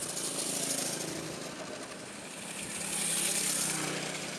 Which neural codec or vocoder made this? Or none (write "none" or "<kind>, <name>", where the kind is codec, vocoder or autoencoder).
none